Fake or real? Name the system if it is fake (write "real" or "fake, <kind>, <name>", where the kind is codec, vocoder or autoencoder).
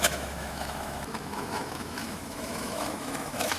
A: fake, autoencoder, DAC-VAE